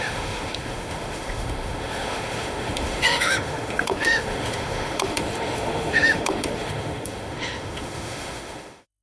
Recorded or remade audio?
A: remade